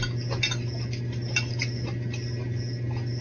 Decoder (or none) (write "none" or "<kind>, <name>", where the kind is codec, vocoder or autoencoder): none